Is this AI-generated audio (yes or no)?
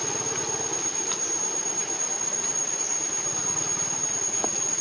no